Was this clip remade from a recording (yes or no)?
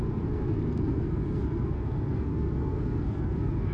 yes